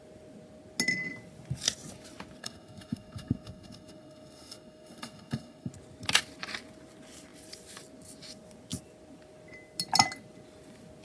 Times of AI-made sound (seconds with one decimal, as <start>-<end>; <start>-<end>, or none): 2.4-5.7